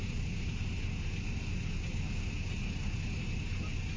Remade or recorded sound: recorded